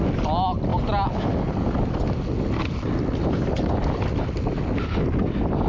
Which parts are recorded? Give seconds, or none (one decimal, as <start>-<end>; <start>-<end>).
0.0-5.7